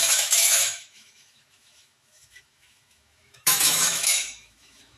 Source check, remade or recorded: remade